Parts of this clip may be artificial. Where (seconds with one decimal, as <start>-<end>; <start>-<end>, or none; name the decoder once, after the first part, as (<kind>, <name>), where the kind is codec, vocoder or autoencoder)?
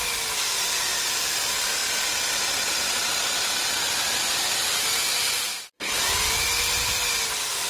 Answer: none